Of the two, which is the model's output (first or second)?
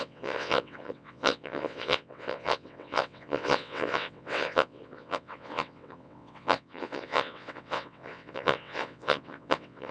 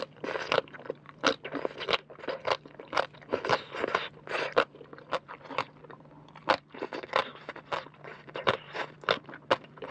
first